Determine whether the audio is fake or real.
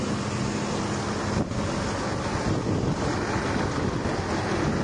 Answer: real